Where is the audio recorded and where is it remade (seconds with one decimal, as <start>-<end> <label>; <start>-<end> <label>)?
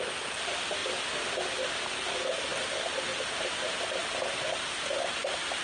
0.0-3.1 recorded; 3.1-4.3 remade; 4.3-5.6 recorded